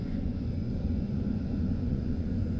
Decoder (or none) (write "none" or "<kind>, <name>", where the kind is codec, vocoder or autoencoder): vocoder, Vocos